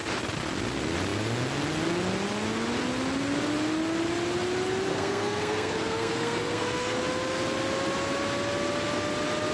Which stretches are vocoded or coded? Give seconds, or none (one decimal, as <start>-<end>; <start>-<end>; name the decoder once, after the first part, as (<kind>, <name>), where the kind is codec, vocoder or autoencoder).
4.9-7.0 (codec, SNAC)